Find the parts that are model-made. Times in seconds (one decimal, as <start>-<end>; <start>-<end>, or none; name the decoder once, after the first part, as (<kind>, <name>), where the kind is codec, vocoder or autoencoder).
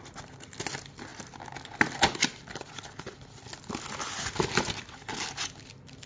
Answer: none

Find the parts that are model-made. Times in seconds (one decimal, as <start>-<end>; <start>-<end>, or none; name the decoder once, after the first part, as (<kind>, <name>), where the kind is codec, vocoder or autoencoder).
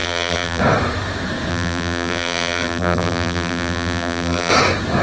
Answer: 0.0-0.6 (vocoder, BigVGAN v2); 1.5-4.5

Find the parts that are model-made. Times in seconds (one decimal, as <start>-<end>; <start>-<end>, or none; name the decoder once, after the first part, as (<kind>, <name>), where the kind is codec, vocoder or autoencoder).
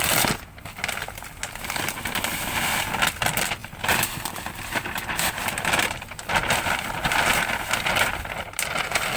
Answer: none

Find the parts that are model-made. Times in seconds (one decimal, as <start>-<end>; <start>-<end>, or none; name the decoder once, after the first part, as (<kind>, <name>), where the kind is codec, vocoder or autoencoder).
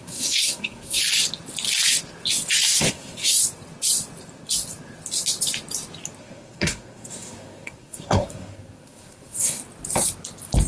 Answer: 0.0-1.0 (codec, SNAC); 2.9-3.4; 6.2-9.6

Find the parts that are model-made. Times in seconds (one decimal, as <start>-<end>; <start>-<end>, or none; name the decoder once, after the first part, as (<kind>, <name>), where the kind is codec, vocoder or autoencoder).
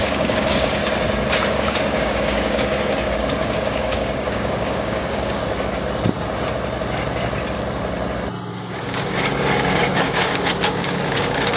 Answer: 0.0-0.8 (codec, DAC); 1.5-5.4; 8.5-11.6